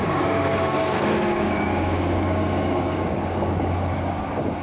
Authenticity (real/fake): fake